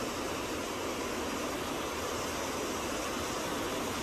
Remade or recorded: recorded